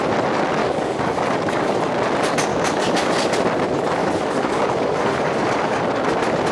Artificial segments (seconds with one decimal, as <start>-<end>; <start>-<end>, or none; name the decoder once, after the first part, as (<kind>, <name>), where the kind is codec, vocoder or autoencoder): 0.6-1.8 (codec, DAC); 2.5-3.1; 4.0-5.8